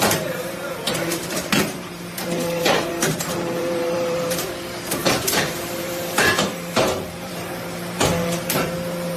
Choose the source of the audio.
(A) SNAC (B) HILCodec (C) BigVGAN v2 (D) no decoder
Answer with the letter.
C